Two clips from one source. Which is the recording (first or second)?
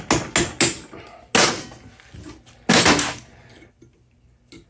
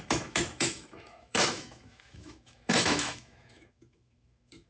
first